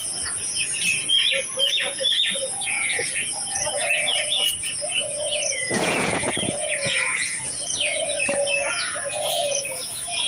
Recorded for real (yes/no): no